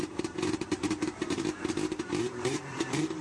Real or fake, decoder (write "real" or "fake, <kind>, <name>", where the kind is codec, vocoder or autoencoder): fake, vocoder, BigVGAN v2